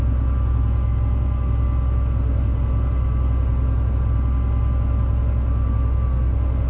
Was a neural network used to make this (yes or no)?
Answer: no